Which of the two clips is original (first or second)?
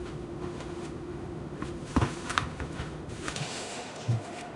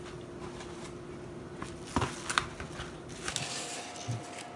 second